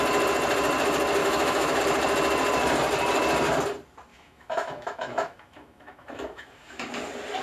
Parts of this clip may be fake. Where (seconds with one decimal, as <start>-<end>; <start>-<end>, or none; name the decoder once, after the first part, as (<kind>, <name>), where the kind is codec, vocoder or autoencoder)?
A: 1.2-1.8 (autoencoder, DAC-VAE); 4.1-6.9